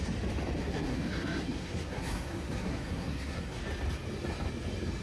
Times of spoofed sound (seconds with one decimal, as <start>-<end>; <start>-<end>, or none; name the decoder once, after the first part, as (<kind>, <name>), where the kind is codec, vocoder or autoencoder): 0.6-3.6 (codec, SNAC)